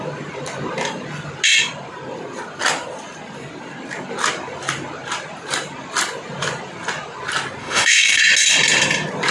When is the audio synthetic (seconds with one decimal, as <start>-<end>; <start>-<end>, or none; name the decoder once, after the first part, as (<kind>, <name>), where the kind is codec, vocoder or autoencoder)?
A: 7.6-8.2 (autoencoder, DAC-VAE)